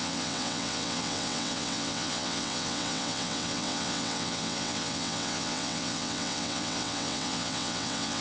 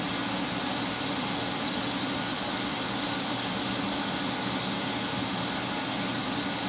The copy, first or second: first